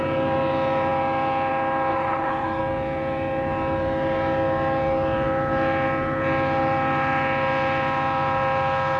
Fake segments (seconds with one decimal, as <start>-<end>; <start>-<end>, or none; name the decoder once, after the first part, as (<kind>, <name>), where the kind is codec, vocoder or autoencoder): 1.9-2.6 (codec, HILCodec)